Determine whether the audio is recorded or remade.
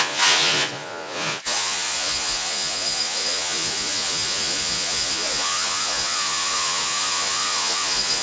remade